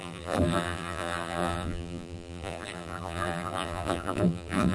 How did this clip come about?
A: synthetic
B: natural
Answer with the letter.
A